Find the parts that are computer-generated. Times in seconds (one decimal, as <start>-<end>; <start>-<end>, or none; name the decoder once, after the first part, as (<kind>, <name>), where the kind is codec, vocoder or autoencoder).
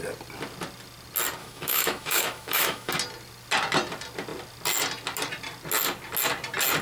1.4-2.9 (autoencoder, DAC-VAE)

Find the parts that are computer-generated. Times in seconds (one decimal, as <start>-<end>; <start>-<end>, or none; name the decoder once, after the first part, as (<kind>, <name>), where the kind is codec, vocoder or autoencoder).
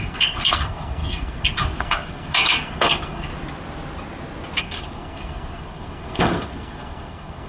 0.0-3.3 (codec, SNAC); 4.6-7.5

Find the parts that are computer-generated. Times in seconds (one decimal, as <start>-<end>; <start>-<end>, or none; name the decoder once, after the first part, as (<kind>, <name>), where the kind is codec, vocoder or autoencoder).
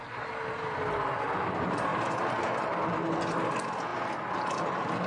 none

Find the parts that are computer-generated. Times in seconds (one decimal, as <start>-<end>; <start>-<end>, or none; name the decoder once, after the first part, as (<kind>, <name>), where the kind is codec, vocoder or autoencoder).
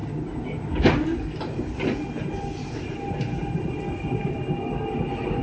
2.6-3.3 (vocoder, BigVGAN v2)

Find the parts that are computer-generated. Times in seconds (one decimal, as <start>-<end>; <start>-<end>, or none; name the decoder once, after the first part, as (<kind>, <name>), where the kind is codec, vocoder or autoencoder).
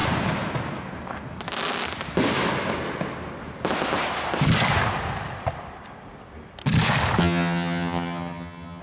7.2-8.8 (vocoder, HiFi-GAN)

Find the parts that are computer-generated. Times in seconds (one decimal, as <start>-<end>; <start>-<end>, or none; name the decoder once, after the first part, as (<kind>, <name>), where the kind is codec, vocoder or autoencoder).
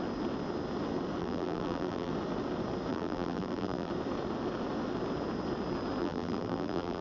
1.2-2.1 (vocoder, BigVGAN v2); 2.9-3.9; 6.0-7.0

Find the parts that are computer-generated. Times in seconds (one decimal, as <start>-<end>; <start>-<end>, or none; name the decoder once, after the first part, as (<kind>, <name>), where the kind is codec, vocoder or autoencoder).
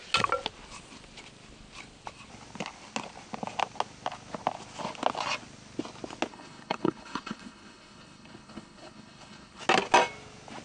6.3-9.6 (codec, HILCodec)